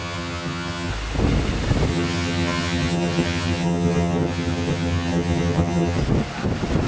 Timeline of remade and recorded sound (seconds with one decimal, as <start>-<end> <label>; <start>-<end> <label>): 0.0-0.9 remade; 0.9-1.9 recorded; 1.9-6.0 remade; 6.0-6.9 recorded